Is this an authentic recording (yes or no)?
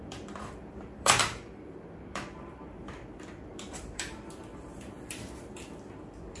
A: no